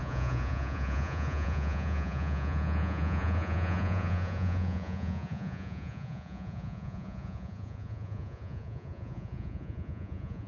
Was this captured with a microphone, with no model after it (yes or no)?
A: no